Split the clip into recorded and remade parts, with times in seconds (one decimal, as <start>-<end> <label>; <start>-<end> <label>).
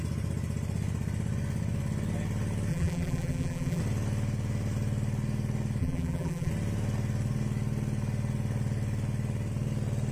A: 0.0-2.7 recorded; 2.7-3.8 remade; 3.8-5.8 recorded; 5.8-6.5 remade; 6.5-10.1 recorded